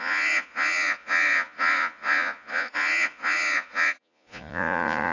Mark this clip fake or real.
fake